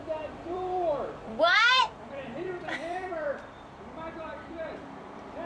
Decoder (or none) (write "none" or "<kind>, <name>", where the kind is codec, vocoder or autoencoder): vocoder, BigVGAN v2